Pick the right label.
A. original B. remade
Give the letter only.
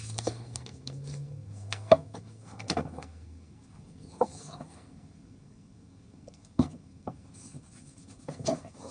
B